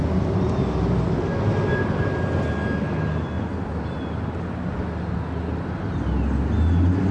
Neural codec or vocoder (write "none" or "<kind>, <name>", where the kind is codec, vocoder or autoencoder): none